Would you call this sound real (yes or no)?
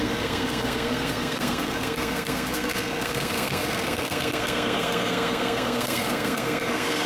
no